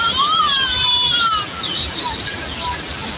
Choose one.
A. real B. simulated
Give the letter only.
B